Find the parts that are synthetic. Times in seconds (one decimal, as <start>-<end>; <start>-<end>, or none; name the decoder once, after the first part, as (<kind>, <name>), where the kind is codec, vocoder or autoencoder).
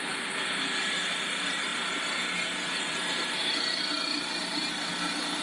none